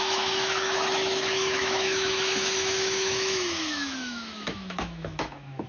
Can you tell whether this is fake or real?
fake